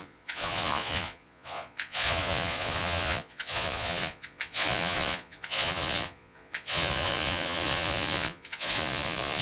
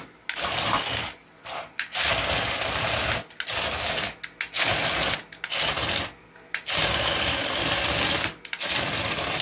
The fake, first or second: first